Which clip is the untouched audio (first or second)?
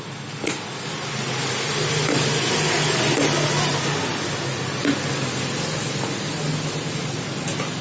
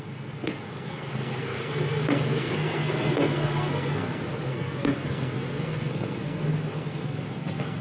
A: first